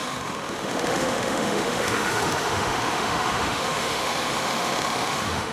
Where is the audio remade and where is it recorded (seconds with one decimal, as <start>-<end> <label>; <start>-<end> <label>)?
0.0-5.5 remade

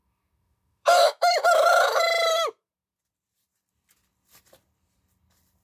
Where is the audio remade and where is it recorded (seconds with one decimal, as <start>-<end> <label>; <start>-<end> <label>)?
0.0-2.7 remade; 2.7-5.6 recorded

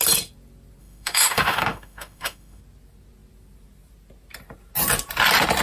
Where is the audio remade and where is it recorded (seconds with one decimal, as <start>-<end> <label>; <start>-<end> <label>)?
0.0-0.8 recorded; 0.8-2.6 remade; 2.6-5.6 recorded

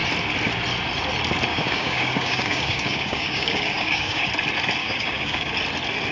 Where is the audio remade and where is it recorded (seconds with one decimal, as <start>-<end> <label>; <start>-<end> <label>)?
0.0-1.5 recorded; 1.5-4.3 remade; 4.3-4.8 recorded; 4.8-5.5 remade; 5.5-6.1 recorded